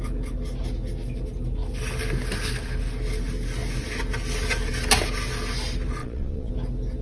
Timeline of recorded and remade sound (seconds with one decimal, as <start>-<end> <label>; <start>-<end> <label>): 0.0-6.0 recorded; 6.0-6.5 remade; 6.5-7.0 recorded